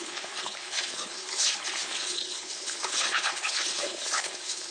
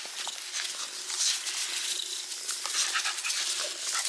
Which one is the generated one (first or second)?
first